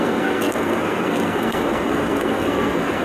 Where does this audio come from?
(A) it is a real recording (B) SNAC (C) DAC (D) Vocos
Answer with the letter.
B